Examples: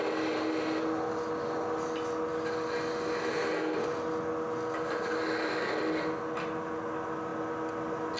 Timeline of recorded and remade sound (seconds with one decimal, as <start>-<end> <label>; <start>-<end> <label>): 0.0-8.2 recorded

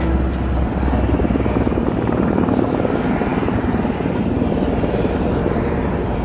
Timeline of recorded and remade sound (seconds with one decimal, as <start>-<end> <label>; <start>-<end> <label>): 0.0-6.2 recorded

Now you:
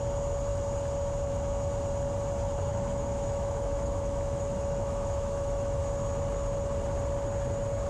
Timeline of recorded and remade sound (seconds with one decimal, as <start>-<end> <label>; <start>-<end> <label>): 0.0-2.7 recorded; 2.7-5.8 remade; 5.8-7.9 recorded

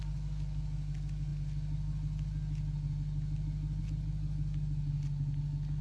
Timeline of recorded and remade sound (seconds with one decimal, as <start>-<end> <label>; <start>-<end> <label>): 0.0-5.8 recorded

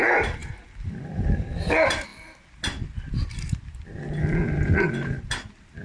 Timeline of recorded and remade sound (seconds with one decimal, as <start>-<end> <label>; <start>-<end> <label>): 0.0-5.8 recorded

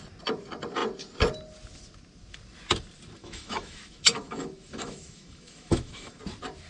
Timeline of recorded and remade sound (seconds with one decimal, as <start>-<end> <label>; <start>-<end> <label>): 0.0-3.2 recorded; 3.2-6.2 remade; 6.2-6.7 recorded